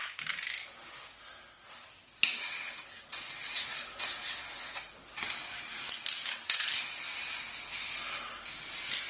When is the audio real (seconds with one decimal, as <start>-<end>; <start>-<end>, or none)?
0.0-7.1; 8.0-9.1